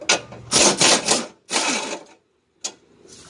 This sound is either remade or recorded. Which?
recorded